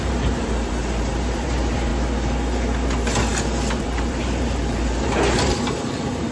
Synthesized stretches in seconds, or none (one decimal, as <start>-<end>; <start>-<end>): 0.0-1.9; 3.7-6.3